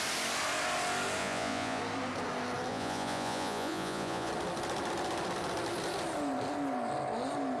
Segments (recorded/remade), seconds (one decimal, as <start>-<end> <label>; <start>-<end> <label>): 0.0-1.2 recorded; 1.2-1.8 remade; 1.8-2.7 recorded; 2.7-4.3 remade; 4.3-7.6 recorded

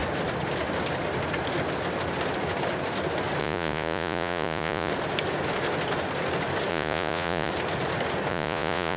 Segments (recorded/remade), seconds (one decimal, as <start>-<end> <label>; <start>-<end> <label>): 0.0-3.4 recorded; 3.4-4.9 remade; 4.9-6.7 recorded; 6.7-7.5 remade; 7.5-8.3 recorded; 8.3-9.0 remade

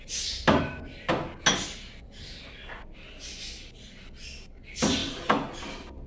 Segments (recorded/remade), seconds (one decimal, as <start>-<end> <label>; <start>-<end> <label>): 0.0-6.1 recorded

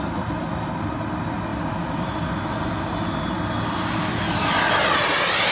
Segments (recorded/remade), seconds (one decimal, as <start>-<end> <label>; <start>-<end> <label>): 0.0-5.5 recorded

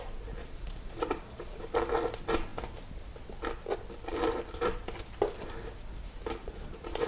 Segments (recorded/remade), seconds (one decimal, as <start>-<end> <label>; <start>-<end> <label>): 0.0-0.4 recorded; 0.4-1.6 remade; 1.6-6.4 recorded; 6.4-7.1 remade

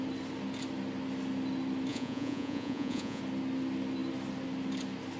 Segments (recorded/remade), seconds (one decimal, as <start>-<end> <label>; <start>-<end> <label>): 0.0-1.9 recorded; 1.9-3.2 remade; 3.2-5.2 recorded

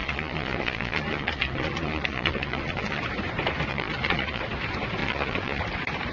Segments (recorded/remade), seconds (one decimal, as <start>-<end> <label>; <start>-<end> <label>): 0.0-3.0 remade; 3.0-3.7 recorded; 3.7-4.4 remade; 4.4-5.0 recorded; 5.0-5.6 remade; 5.6-6.1 recorded